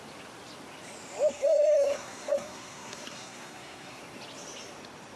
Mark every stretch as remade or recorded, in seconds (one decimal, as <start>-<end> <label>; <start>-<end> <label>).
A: 0.0-1.3 recorded; 1.3-4.0 remade; 4.0-5.2 recorded